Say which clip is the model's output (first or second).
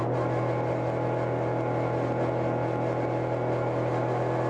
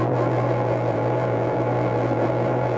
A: second